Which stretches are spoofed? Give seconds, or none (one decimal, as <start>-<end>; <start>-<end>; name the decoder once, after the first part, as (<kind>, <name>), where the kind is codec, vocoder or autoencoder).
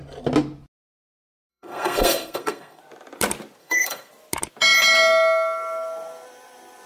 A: 1.5-2.8 (codec, SNAC); 3.6-4.1